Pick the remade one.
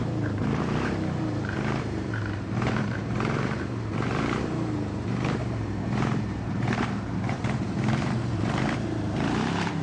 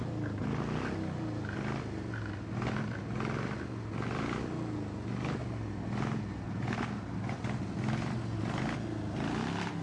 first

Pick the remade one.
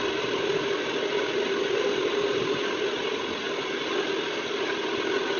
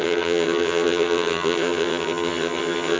second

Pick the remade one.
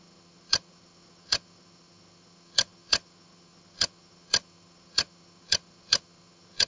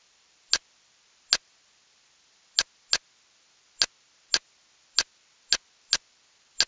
first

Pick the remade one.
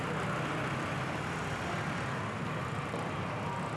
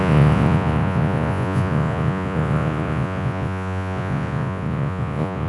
second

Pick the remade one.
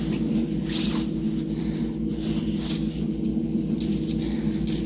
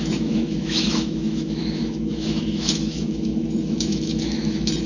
second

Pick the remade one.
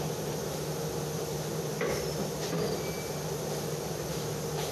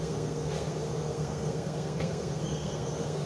second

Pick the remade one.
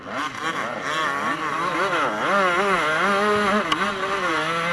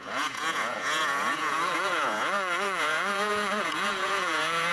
second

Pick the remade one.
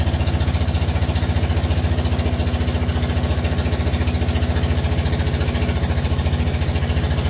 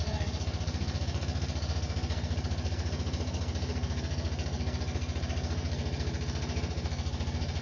second